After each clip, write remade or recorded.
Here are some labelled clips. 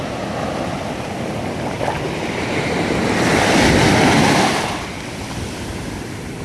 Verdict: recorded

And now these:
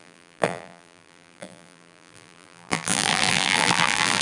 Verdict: remade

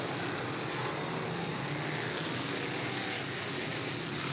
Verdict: recorded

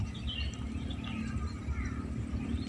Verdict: remade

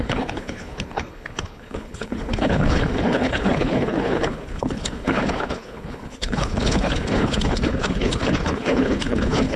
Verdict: remade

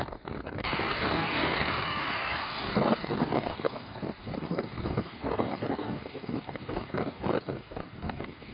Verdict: remade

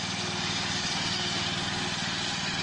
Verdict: recorded